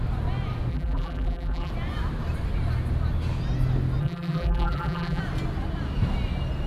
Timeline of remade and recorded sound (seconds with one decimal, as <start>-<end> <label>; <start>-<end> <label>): 0.0-0.7 recorded; 0.7-1.7 remade; 1.7-4.0 recorded; 4.0-5.2 remade; 5.2-6.7 recorded